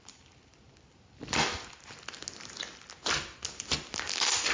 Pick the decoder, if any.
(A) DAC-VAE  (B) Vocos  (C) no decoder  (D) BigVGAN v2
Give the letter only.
C